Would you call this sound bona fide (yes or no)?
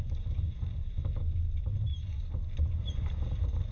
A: no